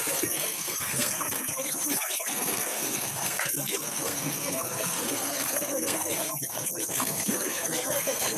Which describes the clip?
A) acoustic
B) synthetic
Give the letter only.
B